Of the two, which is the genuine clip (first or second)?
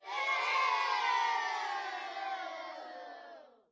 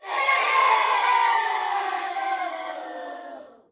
first